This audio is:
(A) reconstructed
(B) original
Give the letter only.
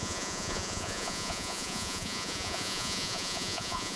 A